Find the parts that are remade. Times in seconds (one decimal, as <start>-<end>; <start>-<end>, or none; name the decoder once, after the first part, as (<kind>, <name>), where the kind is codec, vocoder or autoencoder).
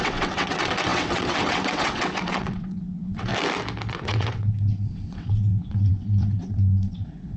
0.0-3.3 (vocoder, WaveNeXt); 3.9-7.4